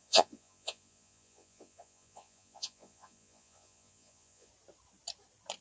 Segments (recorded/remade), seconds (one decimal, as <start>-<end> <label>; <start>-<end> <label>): 0.0-4.5 remade; 4.5-5.6 recorded